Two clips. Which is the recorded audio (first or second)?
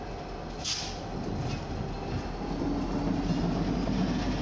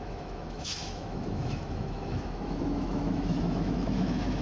first